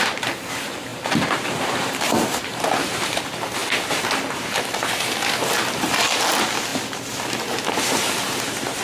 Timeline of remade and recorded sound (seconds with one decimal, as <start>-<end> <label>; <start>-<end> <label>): 0.0-0.9 recorded; 0.9-3.2 remade; 3.2-8.8 recorded